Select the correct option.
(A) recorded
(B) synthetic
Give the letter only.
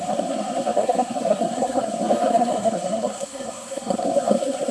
B